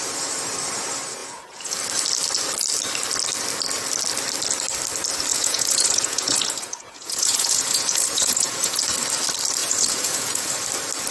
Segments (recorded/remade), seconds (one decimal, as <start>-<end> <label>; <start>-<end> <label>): 0.0-1.2 recorded; 1.2-1.8 remade; 1.8-5.3 recorded; 5.3-8.8 remade; 8.8-9.6 recorded; 9.6-10.5 remade; 10.5-11.1 recorded